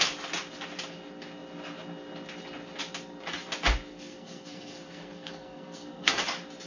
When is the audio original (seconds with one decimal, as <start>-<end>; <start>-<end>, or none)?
0.0-3.9; 6.2-6.7